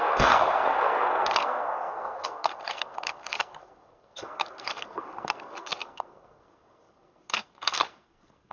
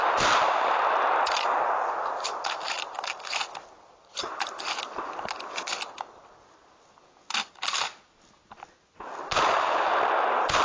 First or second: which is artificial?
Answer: first